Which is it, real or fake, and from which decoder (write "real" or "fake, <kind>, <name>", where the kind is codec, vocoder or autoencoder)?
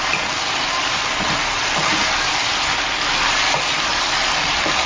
real